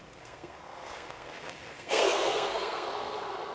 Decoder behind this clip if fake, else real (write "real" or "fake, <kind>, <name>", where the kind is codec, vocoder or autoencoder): fake, codec, SNAC